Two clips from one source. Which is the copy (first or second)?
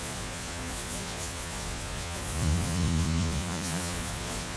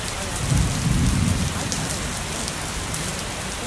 first